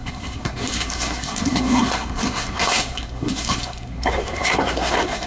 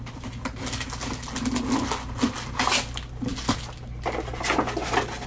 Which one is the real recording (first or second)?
second